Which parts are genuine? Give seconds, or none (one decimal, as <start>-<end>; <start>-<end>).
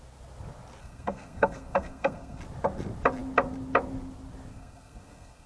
0.0-0.8; 2.4-4.5